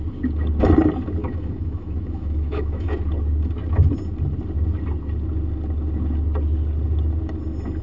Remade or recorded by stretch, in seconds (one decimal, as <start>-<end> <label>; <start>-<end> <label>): 0.0-1.2 recorded; 1.2-2.9 remade; 2.9-7.8 recorded